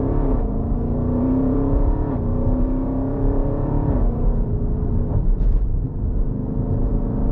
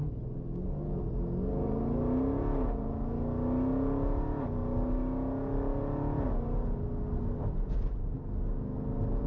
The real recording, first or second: second